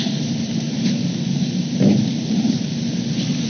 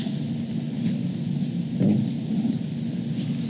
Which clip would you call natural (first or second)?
second